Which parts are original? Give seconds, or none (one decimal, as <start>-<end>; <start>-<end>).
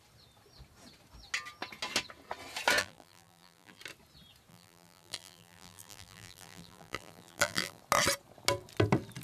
0.0-2.8; 3.8-4.5; 7.8-9.2